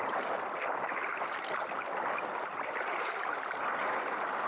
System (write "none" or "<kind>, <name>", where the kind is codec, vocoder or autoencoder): none